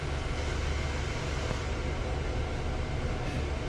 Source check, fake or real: real